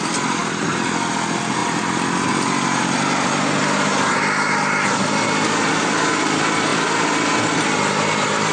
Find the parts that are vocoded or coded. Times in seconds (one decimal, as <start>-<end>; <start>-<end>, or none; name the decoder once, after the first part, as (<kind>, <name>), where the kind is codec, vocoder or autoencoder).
none